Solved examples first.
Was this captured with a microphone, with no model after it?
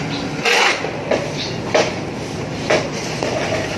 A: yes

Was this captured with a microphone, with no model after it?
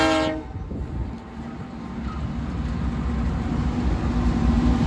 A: yes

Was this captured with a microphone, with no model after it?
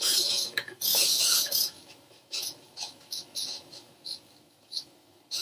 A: no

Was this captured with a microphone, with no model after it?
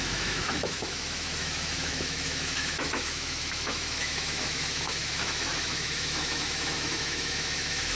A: no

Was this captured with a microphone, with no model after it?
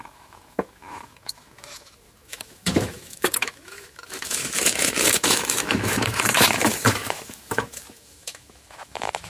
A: no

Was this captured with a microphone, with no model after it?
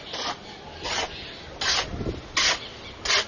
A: yes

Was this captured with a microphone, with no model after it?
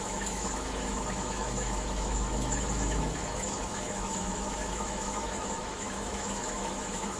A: no